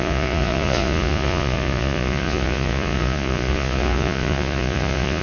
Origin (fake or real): fake